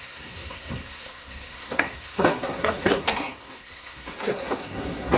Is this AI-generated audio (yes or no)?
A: yes